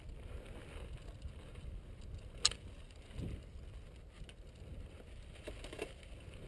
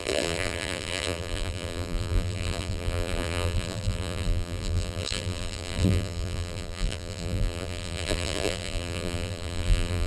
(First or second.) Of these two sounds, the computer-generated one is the second